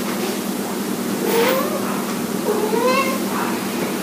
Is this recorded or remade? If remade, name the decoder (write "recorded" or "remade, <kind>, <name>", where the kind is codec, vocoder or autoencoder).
recorded